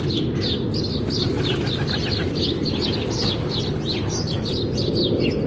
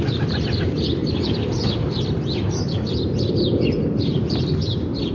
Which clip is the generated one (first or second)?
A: second